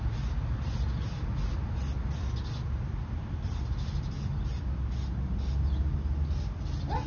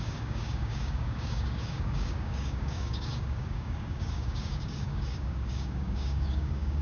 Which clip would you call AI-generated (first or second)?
second